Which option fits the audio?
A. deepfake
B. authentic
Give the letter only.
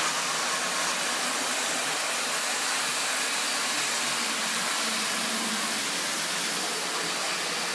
B